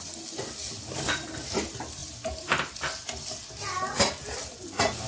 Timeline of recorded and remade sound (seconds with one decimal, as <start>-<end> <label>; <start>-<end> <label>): 0.0-5.1 recorded